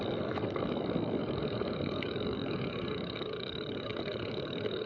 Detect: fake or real fake